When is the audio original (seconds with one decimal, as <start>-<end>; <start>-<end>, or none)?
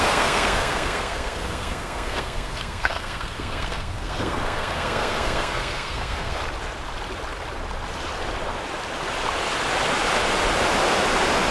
6.4-11.5